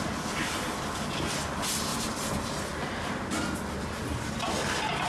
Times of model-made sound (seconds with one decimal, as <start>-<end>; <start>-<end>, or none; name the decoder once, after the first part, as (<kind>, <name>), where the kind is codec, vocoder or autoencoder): none